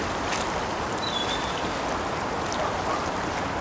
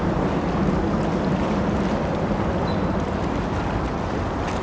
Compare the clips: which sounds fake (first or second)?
first